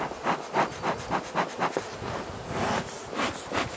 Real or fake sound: real